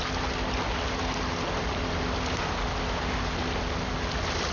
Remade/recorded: recorded